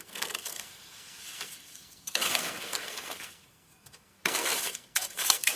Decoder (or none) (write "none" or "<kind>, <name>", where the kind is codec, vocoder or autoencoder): codec, SNAC